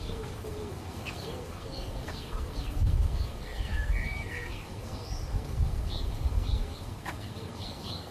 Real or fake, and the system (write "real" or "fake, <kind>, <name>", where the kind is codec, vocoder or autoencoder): fake, codec, SNAC